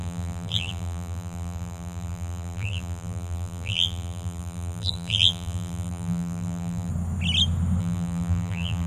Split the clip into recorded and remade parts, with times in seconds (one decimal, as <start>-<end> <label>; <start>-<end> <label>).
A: 0.0-6.9 remade; 6.9-7.8 recorded; 7.8-8.9 remade